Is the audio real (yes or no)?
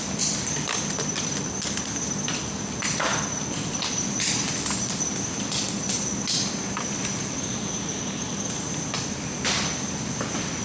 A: yes